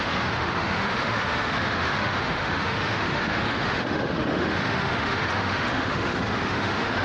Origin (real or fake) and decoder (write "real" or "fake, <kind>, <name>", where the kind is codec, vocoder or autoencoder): fake, autoencoder, DAC-VAE